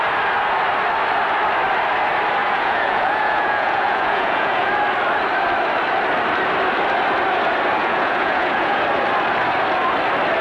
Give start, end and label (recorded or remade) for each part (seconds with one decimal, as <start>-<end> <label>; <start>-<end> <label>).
0.0-2.4 recorded; 2.4-4.7 remade; 4.7-7.8 recorded; 7.8-8.8 remade; 8.8-10.4 recorded